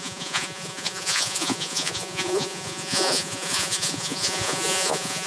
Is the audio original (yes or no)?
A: no